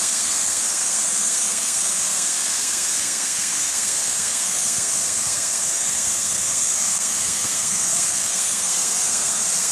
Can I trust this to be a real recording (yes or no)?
no